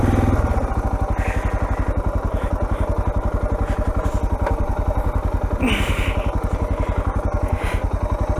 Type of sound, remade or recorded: recorded